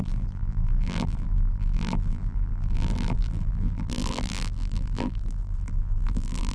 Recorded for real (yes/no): no